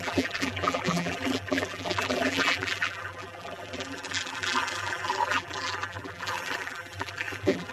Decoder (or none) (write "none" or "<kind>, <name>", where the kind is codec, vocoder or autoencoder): vocoder, BigVGAN v2